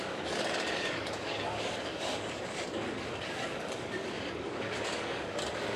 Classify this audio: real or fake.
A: fake